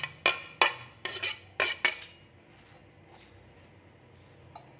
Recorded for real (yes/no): yes